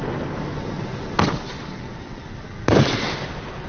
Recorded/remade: recorded